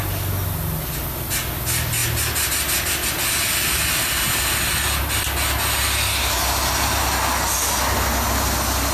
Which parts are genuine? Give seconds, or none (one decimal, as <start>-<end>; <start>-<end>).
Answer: 0.0-8.9